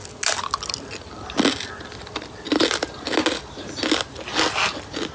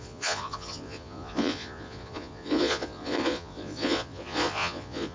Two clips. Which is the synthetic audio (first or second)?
second